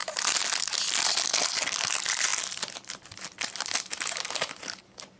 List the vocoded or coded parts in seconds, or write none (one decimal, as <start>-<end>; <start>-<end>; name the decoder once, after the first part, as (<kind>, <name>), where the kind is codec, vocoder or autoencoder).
none